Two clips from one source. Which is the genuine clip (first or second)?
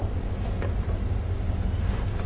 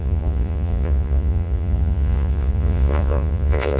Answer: first